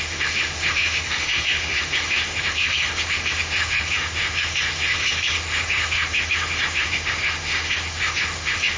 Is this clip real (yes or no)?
no